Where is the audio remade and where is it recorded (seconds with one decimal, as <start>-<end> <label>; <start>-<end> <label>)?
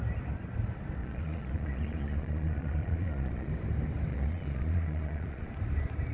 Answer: 0.0-1.0 recorded; 1.0-3.5 remade; 3.5-4.1 recorded; 4.1-5.5 remade; 5.5-6.1 recorded